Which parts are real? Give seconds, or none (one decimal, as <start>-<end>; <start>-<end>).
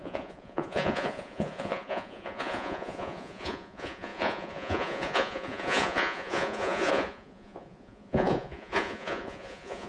none